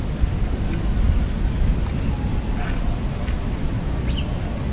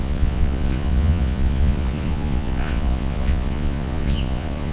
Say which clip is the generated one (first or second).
second